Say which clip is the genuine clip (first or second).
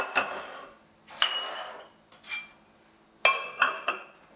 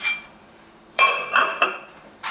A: first